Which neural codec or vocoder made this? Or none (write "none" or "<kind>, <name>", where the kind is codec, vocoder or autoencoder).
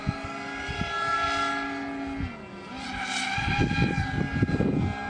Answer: none